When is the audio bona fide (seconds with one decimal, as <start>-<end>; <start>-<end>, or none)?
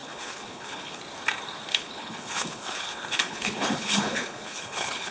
1.0-1.7